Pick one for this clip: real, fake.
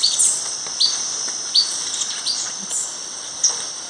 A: real